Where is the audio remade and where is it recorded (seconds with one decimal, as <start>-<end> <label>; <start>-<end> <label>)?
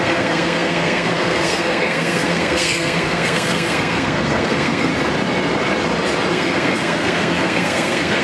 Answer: 0.0-4.9 remade; 4.9-6.3 recorded; 6.3-8.2 remade